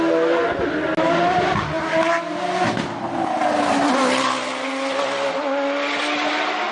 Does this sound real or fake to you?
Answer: real